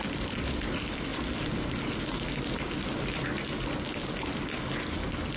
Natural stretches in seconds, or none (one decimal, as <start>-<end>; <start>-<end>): 0.0-5.4